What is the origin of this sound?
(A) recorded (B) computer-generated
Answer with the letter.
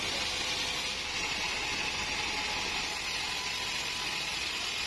A